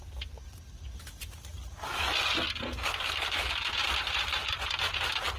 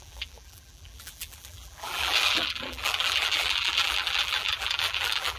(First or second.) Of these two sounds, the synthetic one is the second